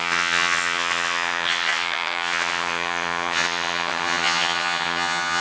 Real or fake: fake